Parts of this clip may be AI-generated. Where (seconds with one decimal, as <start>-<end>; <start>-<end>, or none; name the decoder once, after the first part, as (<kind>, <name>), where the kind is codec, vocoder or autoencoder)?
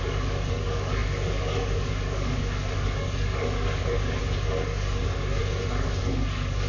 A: 0.0-5.4 (codec, DAC); 6.0-6.7